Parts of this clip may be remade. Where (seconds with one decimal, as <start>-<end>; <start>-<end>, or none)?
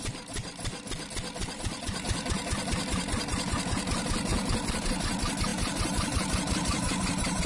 1.4-2.2; 4.3-4.8; 5.5-7.5